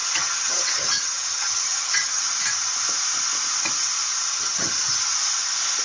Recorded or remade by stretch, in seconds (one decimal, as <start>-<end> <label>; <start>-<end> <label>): 0.0-2.2 remade; 2.2-4.3 recorded; 4.3-5.0 remade; 5.0-5.8 recorded